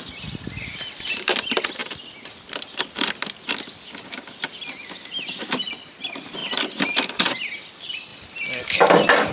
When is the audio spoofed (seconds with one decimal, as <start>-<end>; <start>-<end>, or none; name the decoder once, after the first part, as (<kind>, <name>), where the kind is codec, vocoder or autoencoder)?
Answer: 0.0-1.8 (vocoder, BigVGAN v2); 5.9-6.4; 7.7-8.1; 8.9-9.3